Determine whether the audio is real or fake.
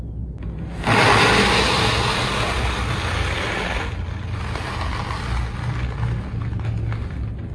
real